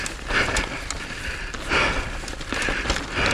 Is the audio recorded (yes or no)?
yes